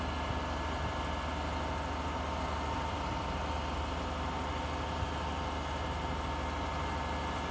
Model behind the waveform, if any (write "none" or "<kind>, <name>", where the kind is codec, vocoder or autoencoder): none